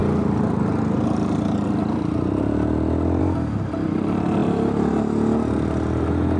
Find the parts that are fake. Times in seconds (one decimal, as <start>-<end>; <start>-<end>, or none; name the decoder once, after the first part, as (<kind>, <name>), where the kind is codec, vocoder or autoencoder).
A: none